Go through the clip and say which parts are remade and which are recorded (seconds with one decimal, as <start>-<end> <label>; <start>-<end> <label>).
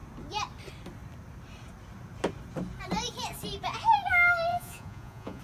0.0-4.5 recorded; 4.5-5.4 remade